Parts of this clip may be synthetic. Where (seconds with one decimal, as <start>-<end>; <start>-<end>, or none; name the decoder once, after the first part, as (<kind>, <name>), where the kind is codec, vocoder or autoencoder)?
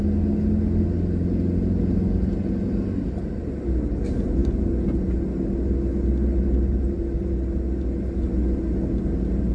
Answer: none